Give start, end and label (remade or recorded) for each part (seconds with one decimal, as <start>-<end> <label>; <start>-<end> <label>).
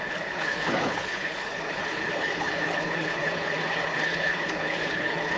0.0-5.4 remade